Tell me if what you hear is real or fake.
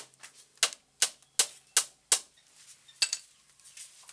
real